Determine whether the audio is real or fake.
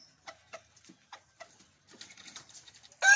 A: fake